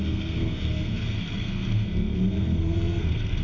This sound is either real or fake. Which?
fake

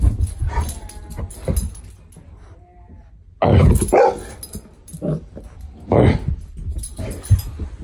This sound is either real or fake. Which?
real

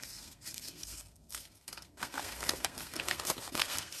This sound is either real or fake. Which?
fake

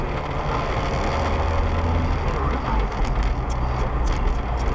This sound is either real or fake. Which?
real